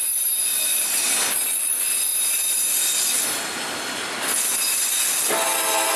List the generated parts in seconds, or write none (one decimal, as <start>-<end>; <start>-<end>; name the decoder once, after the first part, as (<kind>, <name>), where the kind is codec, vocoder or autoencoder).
none